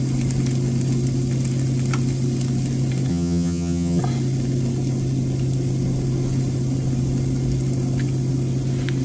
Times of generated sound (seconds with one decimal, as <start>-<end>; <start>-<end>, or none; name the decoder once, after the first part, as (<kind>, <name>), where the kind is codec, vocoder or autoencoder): 3.1-4.0 (vocoder, HiFi-GAN)